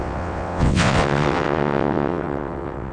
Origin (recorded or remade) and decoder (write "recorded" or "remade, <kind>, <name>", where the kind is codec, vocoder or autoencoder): remade, vocoder, WaveNeXt